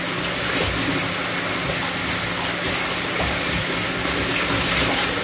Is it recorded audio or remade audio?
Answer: recorded